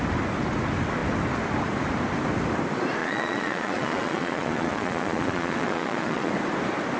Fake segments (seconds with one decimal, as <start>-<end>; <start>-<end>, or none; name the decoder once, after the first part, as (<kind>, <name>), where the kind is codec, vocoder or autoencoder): 3.0-6.3 (vocoder, Vocos)

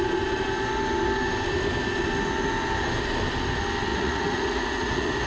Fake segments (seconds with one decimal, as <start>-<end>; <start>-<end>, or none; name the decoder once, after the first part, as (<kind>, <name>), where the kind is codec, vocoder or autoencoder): 3.9-5.3 (vocoder, Vocos)